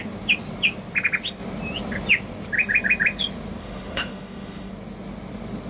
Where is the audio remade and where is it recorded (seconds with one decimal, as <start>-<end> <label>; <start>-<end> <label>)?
0.0-3.6 recorded; 3.6-4.7 remade; 4.7-5.7 recorded